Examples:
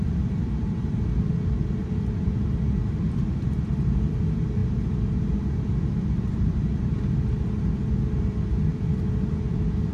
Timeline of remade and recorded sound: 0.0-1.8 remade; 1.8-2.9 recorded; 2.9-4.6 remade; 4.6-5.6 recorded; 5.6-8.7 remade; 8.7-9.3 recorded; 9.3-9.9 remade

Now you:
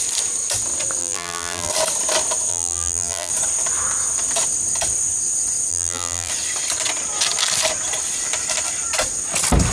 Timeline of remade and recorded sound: 0.0-1.0 recorded; 1.0-1.7 remade; 1.7-2.5 recorded; 2.5-3.3 remade; 3.3-5.7 recorded; 5.7-6.3 remade; 6.3-9.7 recorded

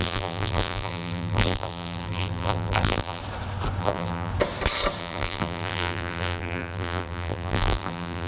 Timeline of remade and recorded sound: 0.0-3.2 remade; 3.2-3.8 recorded; 3.8-4.3 remade; 4.3-5.0 recorded; 5.0-8.3 remade

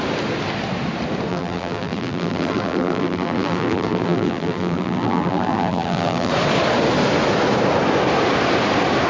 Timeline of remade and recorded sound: 0.0-1.3 recorded; 1.3-6.3 remade; 6.3-9.1 recorded

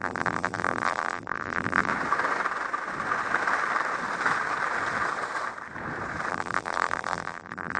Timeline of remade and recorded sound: 0.0-1.9 remade; 1.9-6.3 recorded; 6.3-7.8 remade